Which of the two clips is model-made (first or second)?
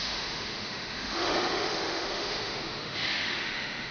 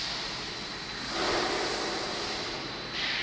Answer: first